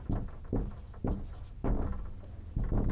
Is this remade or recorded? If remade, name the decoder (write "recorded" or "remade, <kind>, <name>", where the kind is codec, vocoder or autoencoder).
recorded